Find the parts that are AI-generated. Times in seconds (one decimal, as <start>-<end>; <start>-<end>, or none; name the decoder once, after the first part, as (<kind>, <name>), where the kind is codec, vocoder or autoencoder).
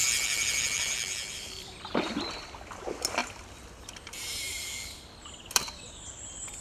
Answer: 0.0-3.2 (vocoder, BigVGAN v2); 5.1-6.6